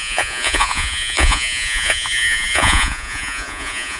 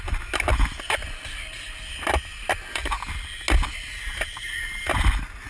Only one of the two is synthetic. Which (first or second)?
first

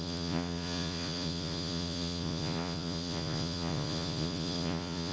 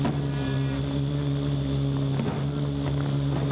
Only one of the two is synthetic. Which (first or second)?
first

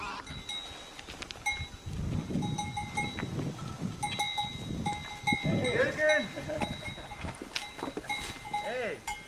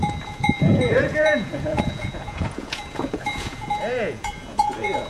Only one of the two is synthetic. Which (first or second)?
second